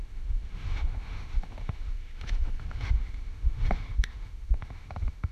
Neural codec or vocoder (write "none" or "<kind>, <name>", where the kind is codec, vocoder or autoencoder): autoencoder, DAC-VAE